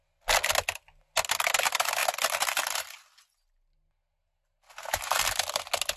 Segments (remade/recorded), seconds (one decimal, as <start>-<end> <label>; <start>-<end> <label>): 0.0-6.0 recorded